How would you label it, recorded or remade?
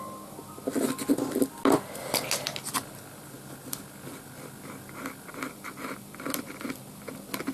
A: recorded